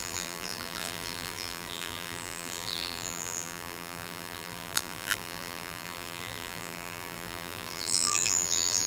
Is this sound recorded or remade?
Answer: remade